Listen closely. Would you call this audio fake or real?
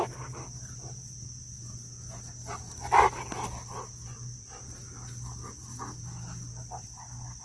real